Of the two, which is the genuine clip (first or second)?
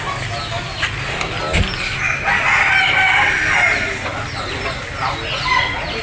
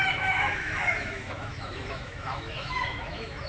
first